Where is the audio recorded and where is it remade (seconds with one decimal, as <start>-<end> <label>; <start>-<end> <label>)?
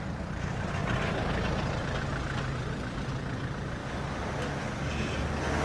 0.0-0.8 recorded; 0.8-1.3 remade; 1.3-5.6 recorded